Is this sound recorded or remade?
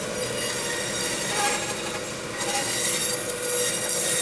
recorded